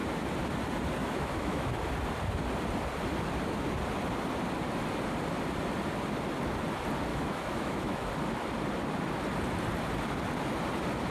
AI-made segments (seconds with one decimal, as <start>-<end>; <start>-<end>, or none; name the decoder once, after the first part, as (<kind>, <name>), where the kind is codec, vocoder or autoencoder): 1.0-1.7 (autoencoder, DAC-VAE); 7.1-8.1